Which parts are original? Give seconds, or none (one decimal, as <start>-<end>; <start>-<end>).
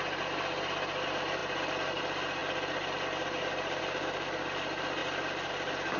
0.0-6.0